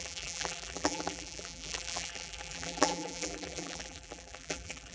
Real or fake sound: fake